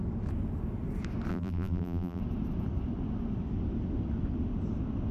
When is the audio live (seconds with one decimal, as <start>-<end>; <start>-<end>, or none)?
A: 0.0-1.3; 2.2-5.1